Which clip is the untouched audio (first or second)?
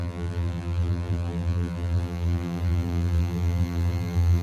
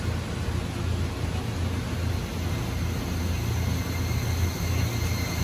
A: second